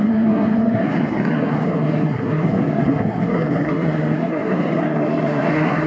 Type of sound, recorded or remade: remade